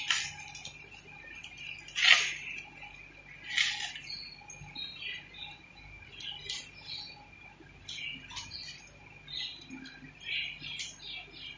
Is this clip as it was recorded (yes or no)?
yes